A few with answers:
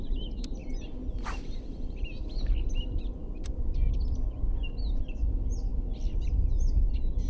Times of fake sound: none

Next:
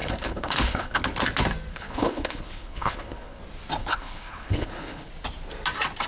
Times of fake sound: 0.0-1.0 (codec, HILCodec); 1.7-3.4; 3.8-5.1

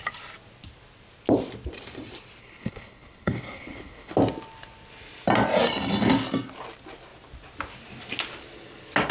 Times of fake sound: 2.4-4.1 (codec, HILCodec)

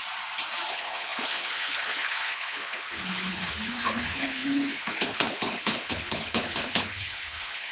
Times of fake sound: 0.7-7.7 (codec, HILCodec)

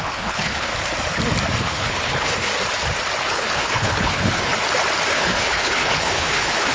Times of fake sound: 0.0-0.7 (codec, HILCodec); 1.6-2.5; 3.2-4.5; 5.1-6.7

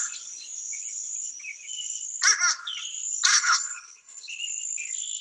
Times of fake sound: 3.3-4.4 (codec, HILCodec)